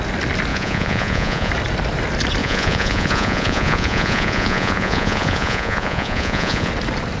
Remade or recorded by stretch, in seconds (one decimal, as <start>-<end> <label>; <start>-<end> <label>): 0.0-0.5 recorded; 0.5-1.5 remade; 1.5-2.4 recorded; 2.4-6.7 remade; 6.7-7.2 recorded